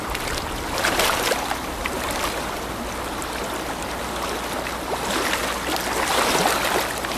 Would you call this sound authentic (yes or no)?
yes